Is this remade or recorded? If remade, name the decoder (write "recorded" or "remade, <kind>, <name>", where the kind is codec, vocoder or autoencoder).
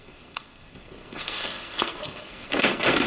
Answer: remade, codec, SNAC